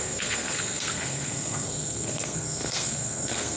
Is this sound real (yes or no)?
no